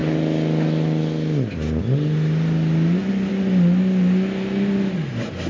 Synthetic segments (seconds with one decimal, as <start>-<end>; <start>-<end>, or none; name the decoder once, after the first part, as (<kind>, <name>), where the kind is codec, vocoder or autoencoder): none